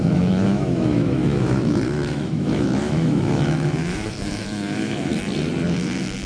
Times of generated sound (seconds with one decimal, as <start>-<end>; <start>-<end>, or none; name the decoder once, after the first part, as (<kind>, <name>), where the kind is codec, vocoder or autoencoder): 0.0-5.1 (autoencoder, DAC-VAE); 5.7-6.3